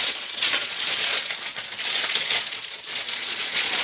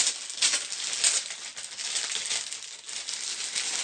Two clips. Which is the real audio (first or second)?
second